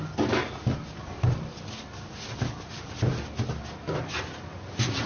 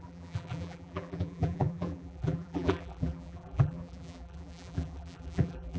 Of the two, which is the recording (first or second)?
first